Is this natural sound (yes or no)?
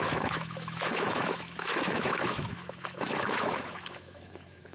no